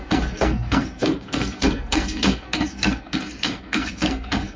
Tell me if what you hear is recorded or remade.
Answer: remade